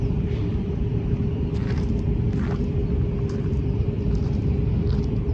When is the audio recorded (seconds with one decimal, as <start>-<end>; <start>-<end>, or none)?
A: 0.0-2.8; 4.5-5.3